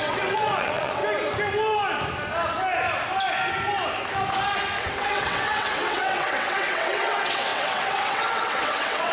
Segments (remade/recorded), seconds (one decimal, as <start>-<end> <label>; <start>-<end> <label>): 0.0-1.0 remade; 1.0-4.8 recorded; 4.8-9.1 remade